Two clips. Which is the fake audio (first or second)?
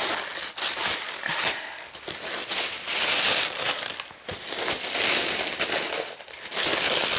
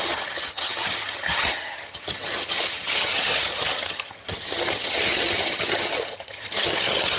second